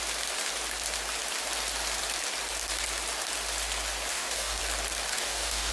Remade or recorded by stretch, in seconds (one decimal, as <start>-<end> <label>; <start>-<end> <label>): 0.0-4.1 recorded; 4.1-4.6 remade; 4.6-5.1 recorded; 5.1-5.7 remade